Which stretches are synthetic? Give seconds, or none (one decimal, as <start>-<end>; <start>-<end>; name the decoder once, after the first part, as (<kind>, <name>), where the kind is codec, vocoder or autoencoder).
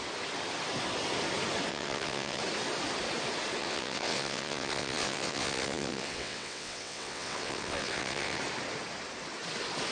1.7-2.4 (vocoder, WaveNeXt); 3.6-8.4